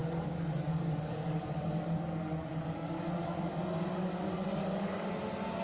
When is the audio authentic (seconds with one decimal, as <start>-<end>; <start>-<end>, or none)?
3.4-4.6; 5.1-5.6